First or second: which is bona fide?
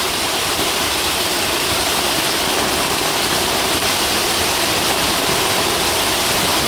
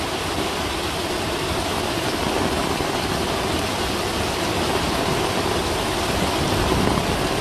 second